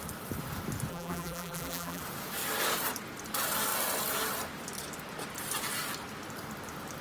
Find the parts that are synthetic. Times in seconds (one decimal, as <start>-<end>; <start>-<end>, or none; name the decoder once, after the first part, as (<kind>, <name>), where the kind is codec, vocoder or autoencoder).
0.9-2.0 (vocoder, BigVGAN v2)